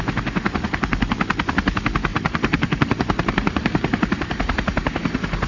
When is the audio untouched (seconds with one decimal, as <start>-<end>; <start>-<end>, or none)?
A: 0.0-2.1